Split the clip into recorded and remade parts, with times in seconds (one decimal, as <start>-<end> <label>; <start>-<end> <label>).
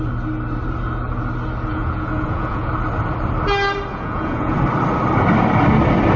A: 0.0-1.7 recorded; 1.7-2.7 remade; 2.7-3.9 recorded; 3.9-4.6 remade; 4.6-6.2 recorded